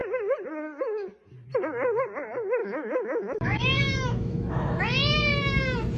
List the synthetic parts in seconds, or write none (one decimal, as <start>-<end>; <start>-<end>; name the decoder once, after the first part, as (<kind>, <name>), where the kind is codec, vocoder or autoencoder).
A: 2.6-4.8 (autoencoder, DAC-VAE)